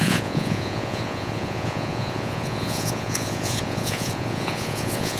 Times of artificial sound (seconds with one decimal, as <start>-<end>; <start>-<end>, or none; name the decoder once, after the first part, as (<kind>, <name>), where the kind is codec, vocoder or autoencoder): 0.0-5.2 (vocoder, Vocos)